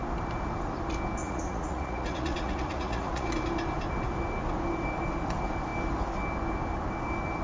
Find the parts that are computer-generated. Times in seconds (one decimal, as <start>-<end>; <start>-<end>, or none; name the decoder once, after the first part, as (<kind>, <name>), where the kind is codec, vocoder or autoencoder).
1.2-3.3 (vocoder, Vocos)